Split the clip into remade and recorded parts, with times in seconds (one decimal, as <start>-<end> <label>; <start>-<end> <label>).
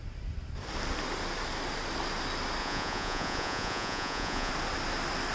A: 0.0-2.6 recorded; 2.6-4.5 remade; 4.5-5.3 recorded